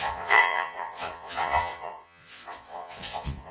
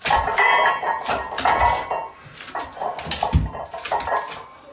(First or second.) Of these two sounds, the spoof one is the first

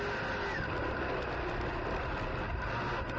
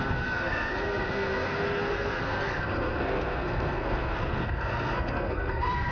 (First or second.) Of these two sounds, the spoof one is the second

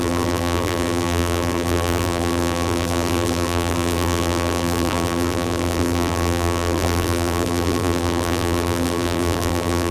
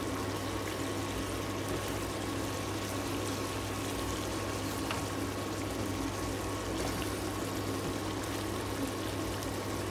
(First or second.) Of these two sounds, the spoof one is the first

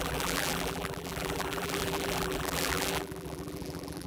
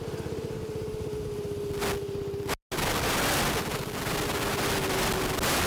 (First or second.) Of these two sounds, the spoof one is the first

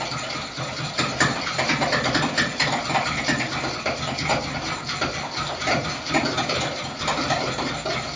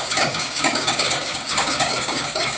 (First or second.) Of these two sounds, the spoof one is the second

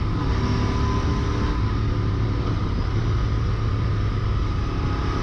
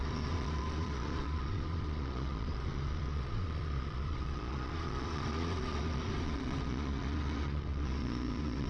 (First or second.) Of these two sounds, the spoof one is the second